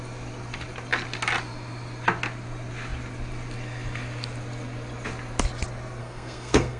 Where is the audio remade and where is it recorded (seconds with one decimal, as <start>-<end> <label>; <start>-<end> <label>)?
0.0-6.0 recorded; 6.0-6.8 remade

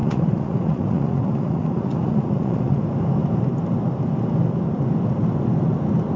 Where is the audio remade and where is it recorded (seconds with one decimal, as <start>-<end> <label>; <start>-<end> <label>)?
0.0-2.8 remade; 2.8-6.2 recorded

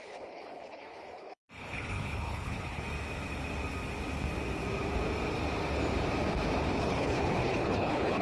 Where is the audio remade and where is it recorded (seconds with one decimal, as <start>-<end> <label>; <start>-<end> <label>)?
0.0-2.8 remade; 2.8-6.8 recorded; 6.8-8.2 remade

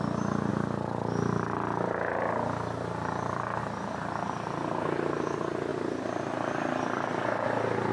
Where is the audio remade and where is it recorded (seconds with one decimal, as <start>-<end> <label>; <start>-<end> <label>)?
0.0-0.5 recorded; 0.5-3.6 remade; 3.6-5.7 recorded; 5.7-7.9 remade